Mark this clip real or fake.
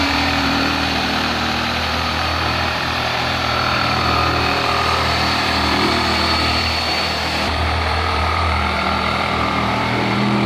fake